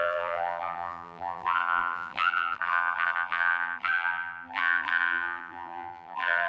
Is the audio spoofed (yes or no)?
yes